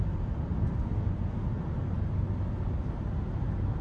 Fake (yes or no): no